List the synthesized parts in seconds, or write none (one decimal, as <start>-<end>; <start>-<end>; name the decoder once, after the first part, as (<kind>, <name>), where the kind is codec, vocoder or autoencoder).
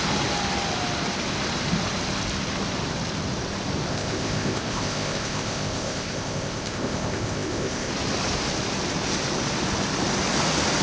3.9-7.9 (codec, ZipCodec)